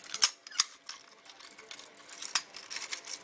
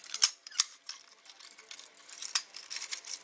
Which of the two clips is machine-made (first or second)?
second